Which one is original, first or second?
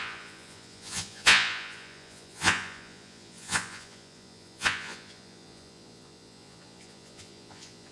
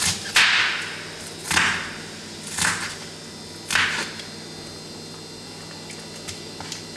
second